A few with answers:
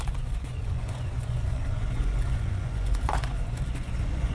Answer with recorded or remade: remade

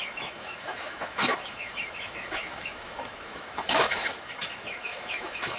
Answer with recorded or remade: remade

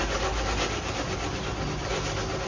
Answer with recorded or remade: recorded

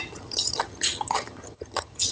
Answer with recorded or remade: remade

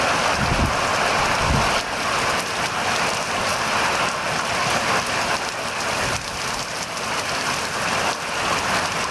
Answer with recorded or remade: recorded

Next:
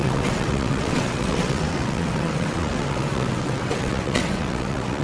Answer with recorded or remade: remade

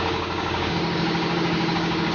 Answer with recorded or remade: remade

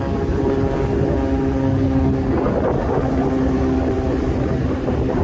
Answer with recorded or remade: recorded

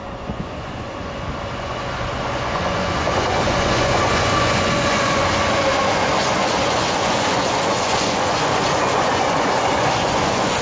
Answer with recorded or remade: remade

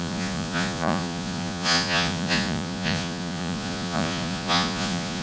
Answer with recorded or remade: remade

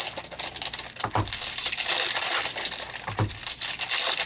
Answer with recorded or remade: recorded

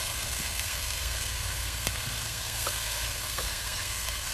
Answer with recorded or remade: remade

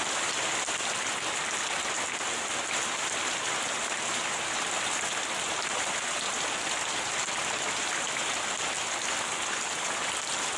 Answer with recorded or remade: recorded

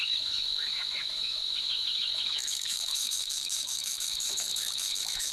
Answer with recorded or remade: remade